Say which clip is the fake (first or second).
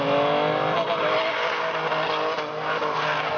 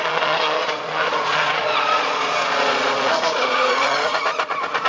second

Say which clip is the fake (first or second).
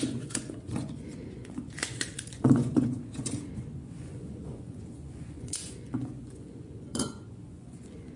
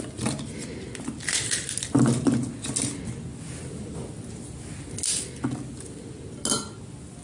first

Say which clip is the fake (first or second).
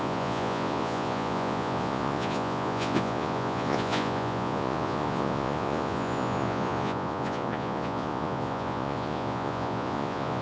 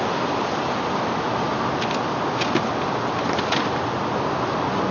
first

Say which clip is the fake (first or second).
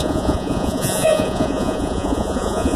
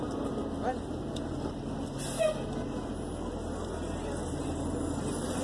first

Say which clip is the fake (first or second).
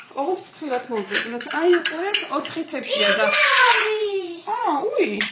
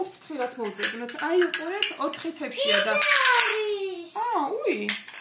first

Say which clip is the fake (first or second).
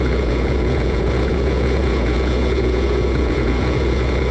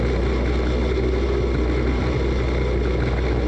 first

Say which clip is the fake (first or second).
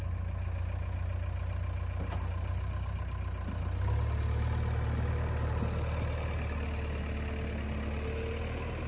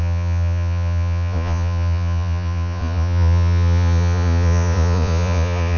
second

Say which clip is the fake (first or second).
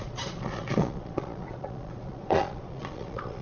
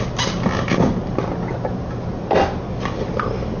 first